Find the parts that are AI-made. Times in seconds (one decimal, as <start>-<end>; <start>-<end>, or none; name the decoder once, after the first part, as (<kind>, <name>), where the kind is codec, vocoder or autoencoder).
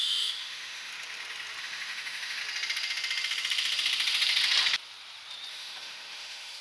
0.0-0.9 (autoencoder, DAC-VAE); 1.6-2.4; 5.5-6.6